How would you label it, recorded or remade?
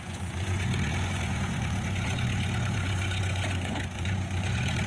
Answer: remade